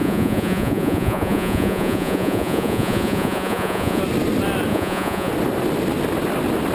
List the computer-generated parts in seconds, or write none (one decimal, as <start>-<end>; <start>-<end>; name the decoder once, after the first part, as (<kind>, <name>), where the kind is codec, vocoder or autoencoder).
0.0-4.0 (vocoder, Vocos); 4.7-5.3